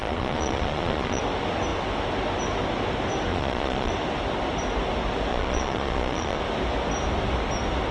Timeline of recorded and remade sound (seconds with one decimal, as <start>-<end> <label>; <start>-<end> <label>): 0.0-1.2 remade; 1.2-3.3 recorded; 3.3-3.9 remade; 3.9-5.3 recorded; 5.3-6.4 remade; 6.4-7.9 recorded